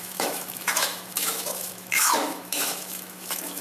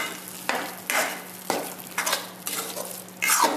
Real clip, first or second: second